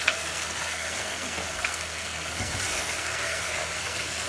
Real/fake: fake